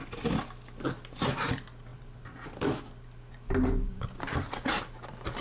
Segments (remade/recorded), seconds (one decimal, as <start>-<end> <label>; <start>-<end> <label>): 0.0-5.4 recorded